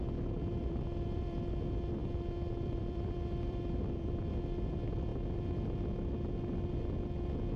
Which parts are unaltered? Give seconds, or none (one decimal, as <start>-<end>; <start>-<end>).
0.0-0.6; 2.0-2.6; 5.1-7.6